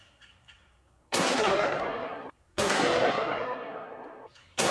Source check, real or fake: fake